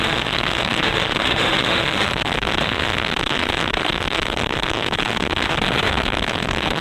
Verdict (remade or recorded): remade